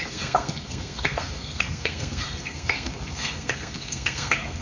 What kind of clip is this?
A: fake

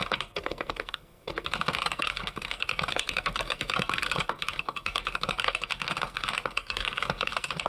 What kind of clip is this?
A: fake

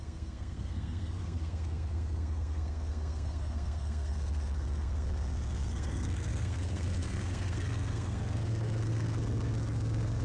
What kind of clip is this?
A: fake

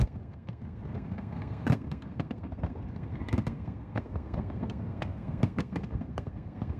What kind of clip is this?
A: fake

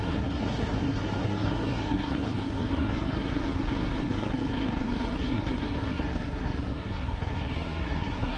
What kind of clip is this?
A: fake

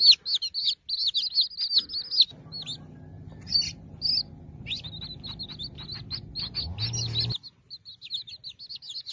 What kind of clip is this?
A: real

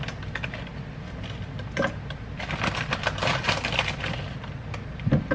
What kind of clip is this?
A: real